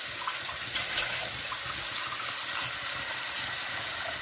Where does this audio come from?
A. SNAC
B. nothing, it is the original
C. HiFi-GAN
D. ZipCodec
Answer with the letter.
B